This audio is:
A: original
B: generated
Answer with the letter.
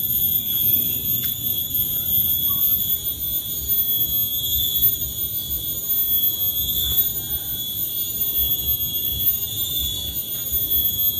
A